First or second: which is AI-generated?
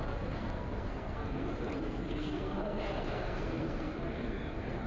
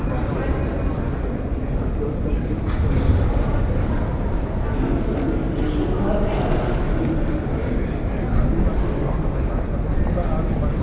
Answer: first